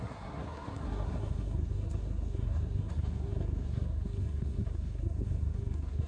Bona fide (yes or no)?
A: no